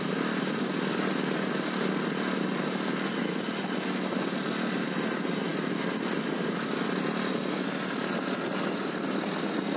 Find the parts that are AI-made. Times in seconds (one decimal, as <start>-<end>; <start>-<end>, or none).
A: none